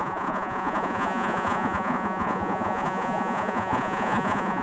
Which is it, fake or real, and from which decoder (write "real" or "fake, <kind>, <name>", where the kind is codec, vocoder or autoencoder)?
fake, vocoder, Vocos